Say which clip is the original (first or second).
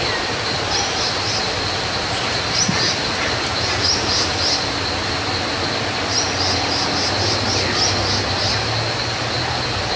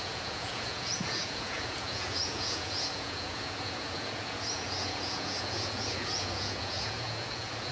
first